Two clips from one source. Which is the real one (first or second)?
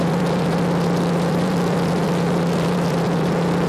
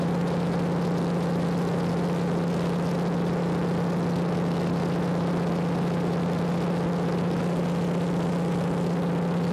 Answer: second